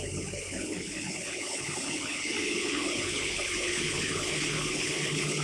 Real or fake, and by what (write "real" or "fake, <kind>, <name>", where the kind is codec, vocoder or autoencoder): fake, codec, HILCodec